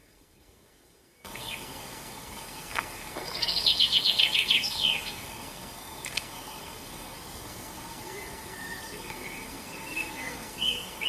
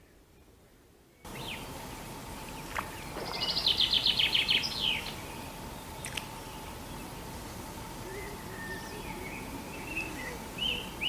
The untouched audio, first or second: second